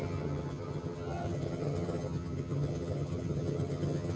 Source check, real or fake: fake